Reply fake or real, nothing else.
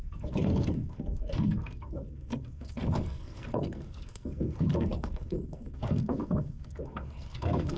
fake